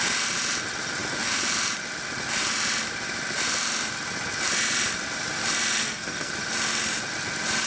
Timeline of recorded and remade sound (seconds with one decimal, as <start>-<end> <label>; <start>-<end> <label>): 0.0-5.8 recorded; 5.8-6.3 remade; 6.3-7.7 recorded